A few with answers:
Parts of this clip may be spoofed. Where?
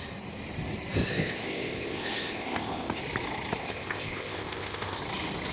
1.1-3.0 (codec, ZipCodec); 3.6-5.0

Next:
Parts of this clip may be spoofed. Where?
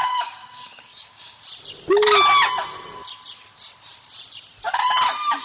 0.0-1.4 (codec, DAC)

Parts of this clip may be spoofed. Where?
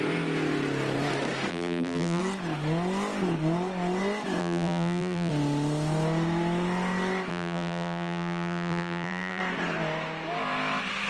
1.5-2.2 (vocoder, BigVGAN v2); 4.4-5.3; 7.3-9.4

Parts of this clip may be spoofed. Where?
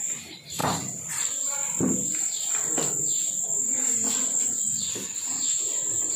0.0-0.6 (vocoder, BigVGAN v2); 1.1-1.6; 5.3-6.2